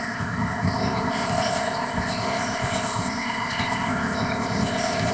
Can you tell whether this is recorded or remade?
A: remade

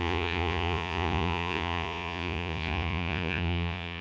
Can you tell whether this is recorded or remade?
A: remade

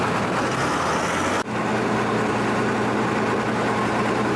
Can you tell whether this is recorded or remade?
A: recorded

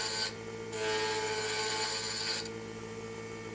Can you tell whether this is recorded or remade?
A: recorded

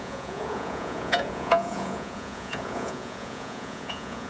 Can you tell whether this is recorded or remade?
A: remade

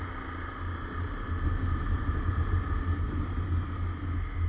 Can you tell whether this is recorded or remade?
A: recorded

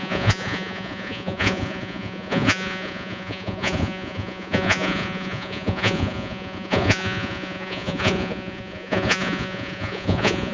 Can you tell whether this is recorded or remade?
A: remade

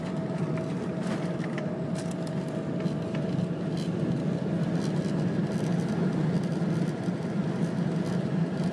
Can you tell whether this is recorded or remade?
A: recorded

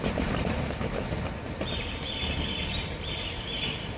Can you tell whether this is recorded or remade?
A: remade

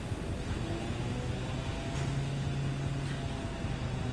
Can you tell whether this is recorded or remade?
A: recorded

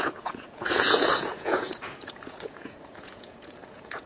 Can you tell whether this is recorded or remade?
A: remade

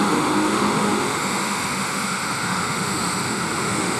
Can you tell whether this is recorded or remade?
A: remade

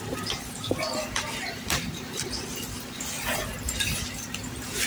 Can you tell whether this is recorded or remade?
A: remade